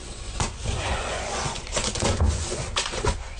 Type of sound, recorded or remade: remade